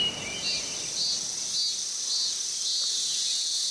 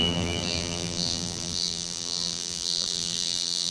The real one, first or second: first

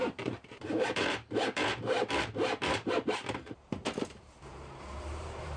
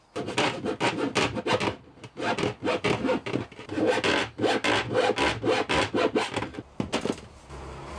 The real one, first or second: second